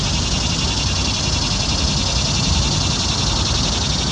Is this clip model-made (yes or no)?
no